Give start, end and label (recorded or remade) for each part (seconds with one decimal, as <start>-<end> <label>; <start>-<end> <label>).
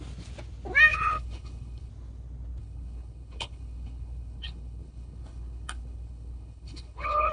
0.0-0.9 recorded; 0.9-1.9 remade; 1.9-2.6 recorded; 2.6-7.3 remade